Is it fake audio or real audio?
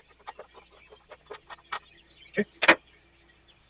real